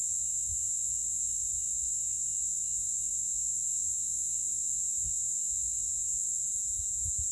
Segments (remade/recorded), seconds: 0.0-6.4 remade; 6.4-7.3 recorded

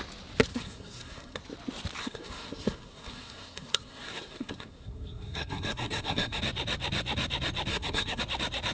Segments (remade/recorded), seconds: 0.0-0.5 recorded; 0.5-1.4 remade; 1.4-2.0 recorded; 2.0-6.4 remade; 6.4-7.7 recorded; 7.7-8.2 remade; 8.2-8.7 recorded

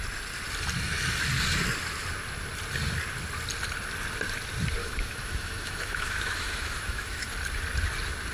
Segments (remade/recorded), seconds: 0.0-4.8 recorded; 4.8-7.3 remade; 7.3-8.3 recorded

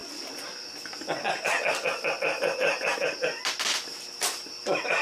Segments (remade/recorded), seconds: 0.0-5.0 recorded

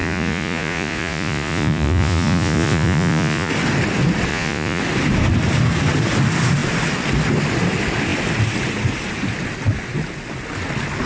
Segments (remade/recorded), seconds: 0.0-3.5 remade; 3.5-4.3 recorded; 4.3-4.8 remade; 4.8-11.1 recorded

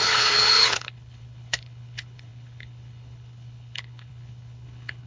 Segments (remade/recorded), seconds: 0.0-5.1 remade

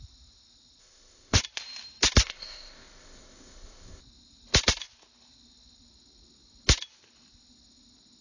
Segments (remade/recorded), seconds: 0.0-0.8 recorded; 0.8-1.4 remade; 1.4-2.2 recorded; 2.2-4.0 remade; 4.0-8.2 recorded